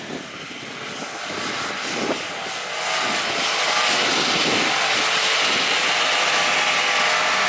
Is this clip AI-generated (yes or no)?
no